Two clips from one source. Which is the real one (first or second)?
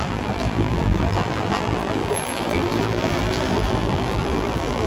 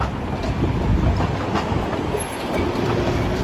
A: second